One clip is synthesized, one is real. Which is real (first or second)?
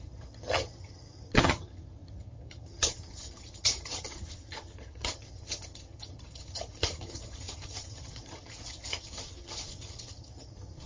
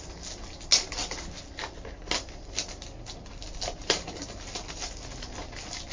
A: second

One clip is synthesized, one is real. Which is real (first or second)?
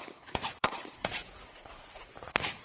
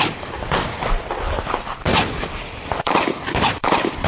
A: second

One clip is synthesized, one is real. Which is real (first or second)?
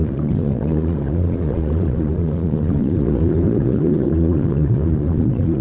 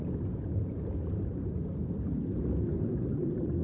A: second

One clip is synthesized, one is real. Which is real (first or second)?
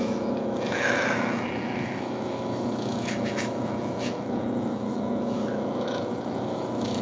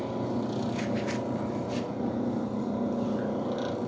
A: second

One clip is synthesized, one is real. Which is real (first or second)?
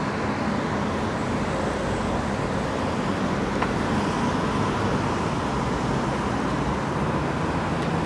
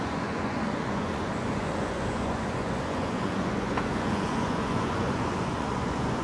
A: first